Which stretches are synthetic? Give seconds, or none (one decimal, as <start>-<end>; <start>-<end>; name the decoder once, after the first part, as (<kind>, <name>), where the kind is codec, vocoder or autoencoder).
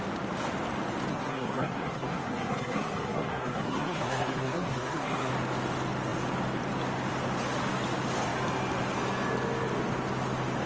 1.1-5.3 (codec, SNAC)